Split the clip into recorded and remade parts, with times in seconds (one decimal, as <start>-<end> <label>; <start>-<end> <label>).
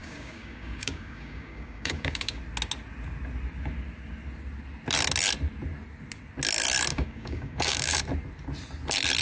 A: 0.0-2.4 remade; 2.4-6.9 recorded; 6.9-8.0 remade; 8.0-9.2 recorded